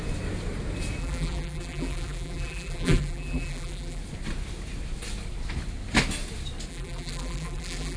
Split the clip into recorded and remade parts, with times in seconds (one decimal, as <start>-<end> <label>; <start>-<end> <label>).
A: 0.0-1.0 recorded; 1.0-4.0 remade; 4.0-6.7 recorded; 6.7-8.0 remade